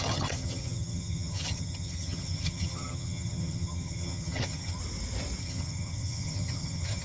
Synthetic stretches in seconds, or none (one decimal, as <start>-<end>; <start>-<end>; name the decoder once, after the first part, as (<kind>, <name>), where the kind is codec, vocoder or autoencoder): 0.0-4.8 (vocoder, HiFi-GAN); 5.4-7.0